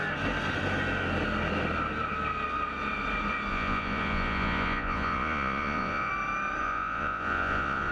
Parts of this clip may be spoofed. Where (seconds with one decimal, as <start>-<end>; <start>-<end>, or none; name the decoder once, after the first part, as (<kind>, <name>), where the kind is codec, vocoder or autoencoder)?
3.5-6.1 (vocoder, Vocos); 6.6-7.9